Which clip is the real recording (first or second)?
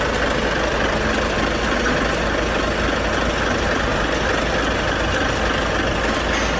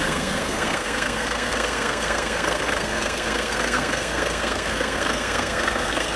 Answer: first